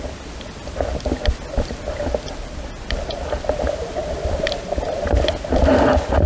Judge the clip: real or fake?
real